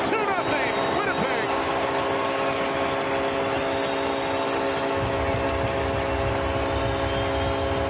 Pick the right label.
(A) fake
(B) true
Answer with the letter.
B